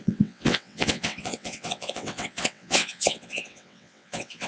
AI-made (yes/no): yes